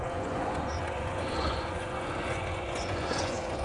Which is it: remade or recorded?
remade